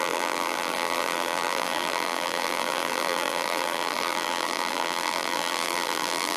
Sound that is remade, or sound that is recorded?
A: remade